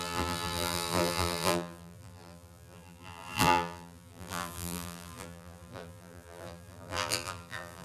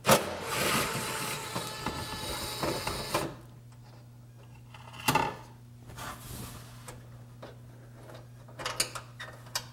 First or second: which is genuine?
second